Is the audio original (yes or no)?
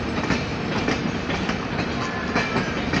yes